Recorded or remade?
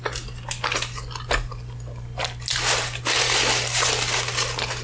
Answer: recorded